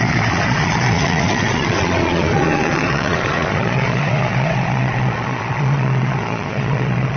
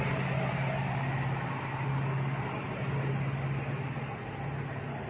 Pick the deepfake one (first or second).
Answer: first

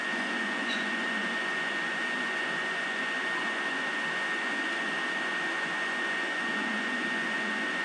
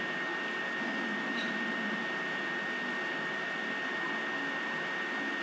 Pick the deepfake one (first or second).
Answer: first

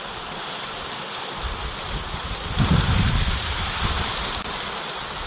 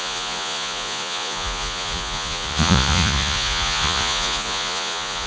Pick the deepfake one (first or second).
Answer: second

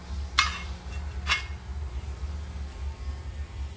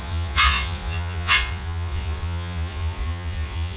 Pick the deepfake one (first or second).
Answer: second